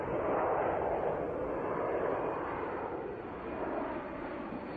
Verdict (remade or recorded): recorded